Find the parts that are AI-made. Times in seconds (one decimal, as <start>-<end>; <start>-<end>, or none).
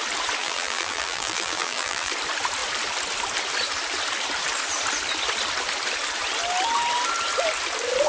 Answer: 0.4-2.1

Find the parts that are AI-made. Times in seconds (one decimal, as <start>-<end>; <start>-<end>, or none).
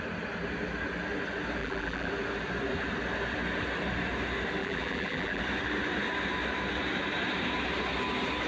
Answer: 1.6-2.1; 4.6-5.4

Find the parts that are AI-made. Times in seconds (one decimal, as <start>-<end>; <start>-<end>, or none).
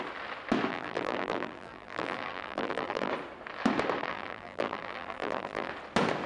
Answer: 0.7-3.1; 4.0-5.7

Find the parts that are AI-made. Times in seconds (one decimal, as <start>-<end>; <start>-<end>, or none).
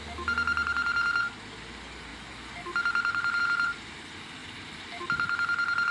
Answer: 4.4-5.0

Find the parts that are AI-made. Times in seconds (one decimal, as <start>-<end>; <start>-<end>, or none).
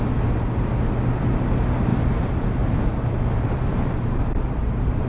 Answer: 1.9-5.1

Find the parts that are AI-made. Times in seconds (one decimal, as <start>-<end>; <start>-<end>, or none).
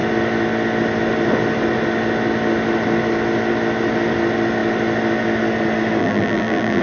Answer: 6.0-6.8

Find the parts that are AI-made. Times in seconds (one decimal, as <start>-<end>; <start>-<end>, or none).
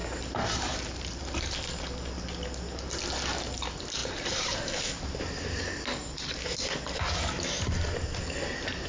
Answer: 0.0-1.2; 4.0-5.1